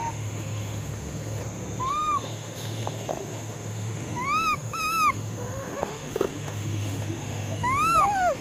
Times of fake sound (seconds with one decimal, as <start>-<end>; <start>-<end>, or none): 0.0-1.4; 1.9-8.4